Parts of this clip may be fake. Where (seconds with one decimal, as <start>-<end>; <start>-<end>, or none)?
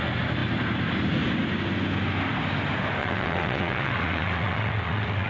3.0-5.3